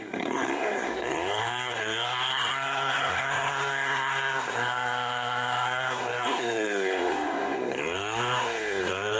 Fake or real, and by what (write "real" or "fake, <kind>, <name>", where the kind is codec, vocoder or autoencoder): fake, codec, SNAC